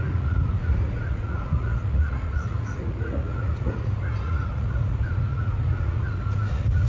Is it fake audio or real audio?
fake